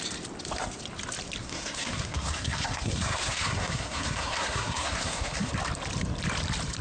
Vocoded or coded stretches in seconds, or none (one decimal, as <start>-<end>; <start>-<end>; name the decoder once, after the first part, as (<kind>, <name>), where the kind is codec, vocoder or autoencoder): 1.4-5.5 (codec, SNAC)